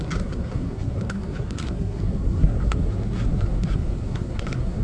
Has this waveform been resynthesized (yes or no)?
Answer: yes